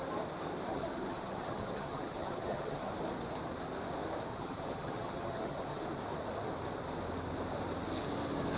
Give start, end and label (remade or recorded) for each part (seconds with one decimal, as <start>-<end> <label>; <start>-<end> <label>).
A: 0.0-0.7 recorded; 0.7-2.9 remade; 2.9-4.3 recorded; 4.3-5.8 remade; 5.8-8.6 recorded